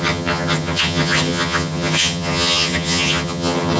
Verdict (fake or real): fake